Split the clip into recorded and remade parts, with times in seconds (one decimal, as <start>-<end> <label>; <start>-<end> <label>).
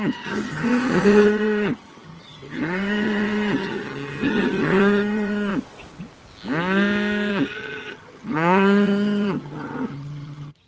0.0-5.5 remade; 5.5-7.3 recorded; 7.3-10.7 remade